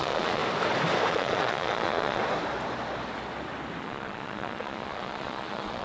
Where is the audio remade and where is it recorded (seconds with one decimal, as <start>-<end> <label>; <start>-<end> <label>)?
0.0-0.4 remade; 0.4-1.1 recorded; 1.1-2.2 remade; 2.2-3.8 recorded; 3.8-5.8 remade